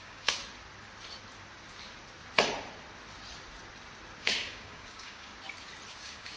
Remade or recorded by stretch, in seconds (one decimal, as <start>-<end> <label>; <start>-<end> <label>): 0.0-0.4 remade; 0.4-4.2 recorded; 4.2-5.3 remade; 5.3-5.9 recorded; 5.9-6.4 remade